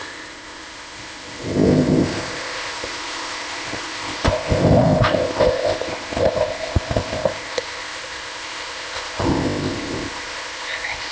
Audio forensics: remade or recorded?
remade